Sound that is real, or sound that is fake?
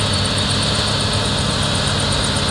real